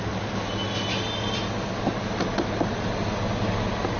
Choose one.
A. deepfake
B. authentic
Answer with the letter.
B